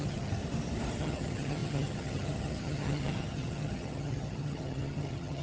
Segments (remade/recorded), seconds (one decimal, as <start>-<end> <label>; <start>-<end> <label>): 0.0-0.4 remade; 0.4-1.0 recorded; 1.0-5.4 remade